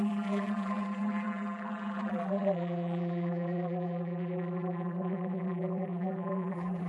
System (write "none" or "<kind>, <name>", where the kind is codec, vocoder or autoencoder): vocoder, BigVGAN v2